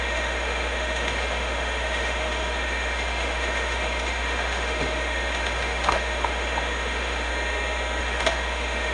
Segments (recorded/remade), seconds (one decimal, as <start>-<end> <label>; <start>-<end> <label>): 0.0-7.3 remade; 7.3-8.0 recorded; 8.0-8.9 remade